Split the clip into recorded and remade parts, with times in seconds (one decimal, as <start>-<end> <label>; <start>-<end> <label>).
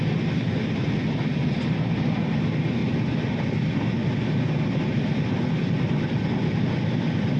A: 0.0-7.4 recorded